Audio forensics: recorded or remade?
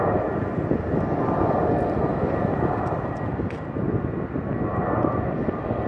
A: recorded